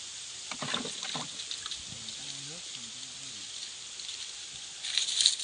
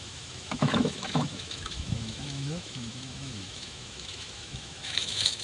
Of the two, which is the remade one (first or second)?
second